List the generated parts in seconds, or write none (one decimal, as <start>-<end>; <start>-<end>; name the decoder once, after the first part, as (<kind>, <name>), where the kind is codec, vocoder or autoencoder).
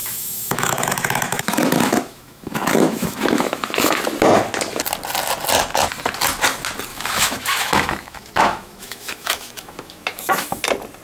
0.0-4.0 (autoencoder, DAC-VAE); 6.9-10.6